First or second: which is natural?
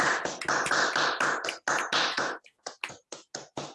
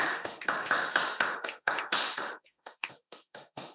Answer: first